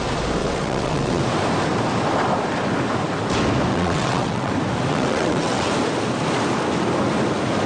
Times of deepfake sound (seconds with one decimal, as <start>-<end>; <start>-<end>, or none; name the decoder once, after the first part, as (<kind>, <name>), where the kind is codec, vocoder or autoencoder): 0.4-1.2 (vocoder, WaveNeXt); 3.7-4.5; 4.9-5.7